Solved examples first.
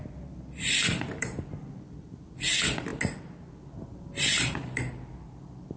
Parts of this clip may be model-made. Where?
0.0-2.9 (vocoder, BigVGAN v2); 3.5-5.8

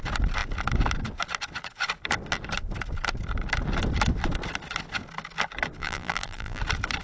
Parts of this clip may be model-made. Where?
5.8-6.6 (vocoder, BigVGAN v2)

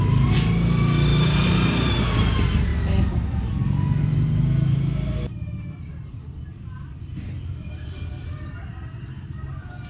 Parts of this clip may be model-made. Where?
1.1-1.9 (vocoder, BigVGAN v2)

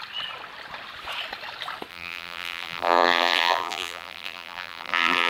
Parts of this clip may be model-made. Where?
1.9-5.3 (vocoder, BigVGAN v2)

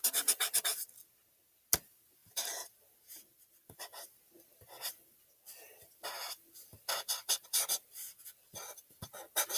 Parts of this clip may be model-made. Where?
2.2-2.8 (vocoder, BigVGAN v2)

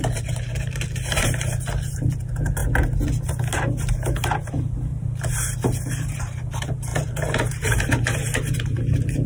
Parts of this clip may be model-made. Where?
0.0-2.6 (vocoder, BigVGAN v2); 3.9-6.9; 7.5-9.3

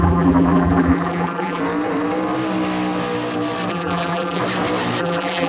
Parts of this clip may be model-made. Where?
0.0-1.6 (vocoder, BigVGAN v2); 3.7-4.4; 5.0-5.5